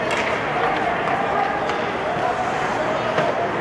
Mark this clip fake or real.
real